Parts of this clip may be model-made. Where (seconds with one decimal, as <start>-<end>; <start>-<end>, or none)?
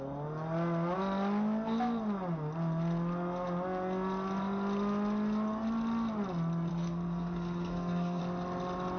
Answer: 6.7-8.2